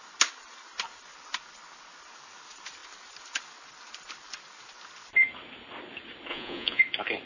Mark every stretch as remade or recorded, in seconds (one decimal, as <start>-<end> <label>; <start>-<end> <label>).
0.0-6.3 recorded; 6.3-6.8 remade; 6.8-7.3 recorded